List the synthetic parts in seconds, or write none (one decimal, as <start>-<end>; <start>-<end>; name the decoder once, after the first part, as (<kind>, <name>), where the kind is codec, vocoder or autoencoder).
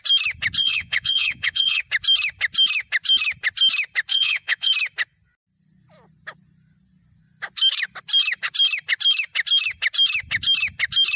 0.6-1.8 (vocoder, Vocos); 4.1-4.7